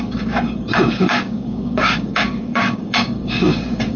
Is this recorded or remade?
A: remade